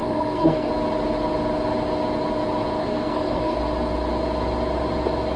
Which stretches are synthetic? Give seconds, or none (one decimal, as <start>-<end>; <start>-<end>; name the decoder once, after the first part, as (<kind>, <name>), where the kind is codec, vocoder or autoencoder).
0.0-0.7 (codec, SNAC); 2.8-3.6